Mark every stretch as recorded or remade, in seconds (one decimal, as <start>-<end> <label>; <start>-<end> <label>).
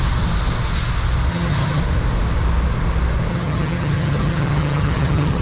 0.0-1.3 recorded; 1.3-1.8 remade; 1.8-3.3 recorded; 3.3-5.4 remade